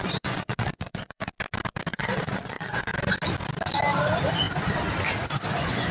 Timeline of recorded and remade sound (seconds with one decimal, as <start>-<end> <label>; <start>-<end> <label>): 0.0-1.3 remade; 1.3-1.9 recorded; 1.9-2.9 remade; 2.9-5.5 recorded; 5.5-5.9 remade

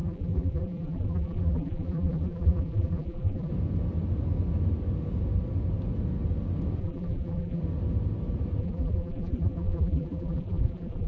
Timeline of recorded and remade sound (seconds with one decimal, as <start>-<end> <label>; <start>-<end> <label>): 0.0-3.5 remade; 3.5-6.8 recorded; 6.8-7.6 remade; 7.6-8.6 recorded; 8.6-11.1 remade

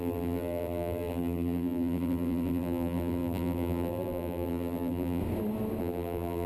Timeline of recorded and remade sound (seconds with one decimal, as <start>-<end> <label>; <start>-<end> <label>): 0.0-5.2 remade; 5.2-5.8 recorded; 5.8-6.5 remade

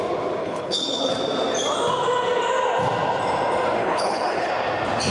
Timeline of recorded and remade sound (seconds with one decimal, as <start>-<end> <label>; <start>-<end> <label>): 0.0-0.4 recorded; 0.4-1.1 remade; 1.1-3.8 recorded; 3.8-4.5 remade; 4.5-5.1 recorded

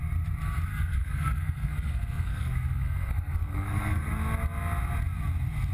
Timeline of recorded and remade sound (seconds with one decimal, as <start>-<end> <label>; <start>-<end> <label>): 0.0-0.7 recorded; 0.7-4.1 remade; 4.1-5.7 recorded